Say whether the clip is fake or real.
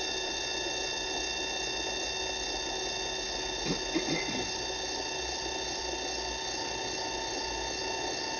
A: real